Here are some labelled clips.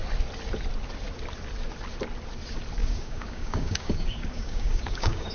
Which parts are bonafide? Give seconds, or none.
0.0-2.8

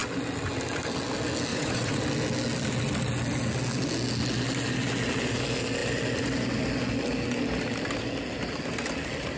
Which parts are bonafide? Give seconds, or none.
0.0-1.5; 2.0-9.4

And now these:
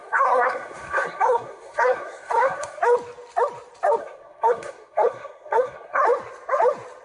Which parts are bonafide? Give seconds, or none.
2.8-4.0; 6.0-7.0